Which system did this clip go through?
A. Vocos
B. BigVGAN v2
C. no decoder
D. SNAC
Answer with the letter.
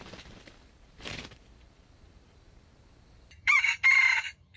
B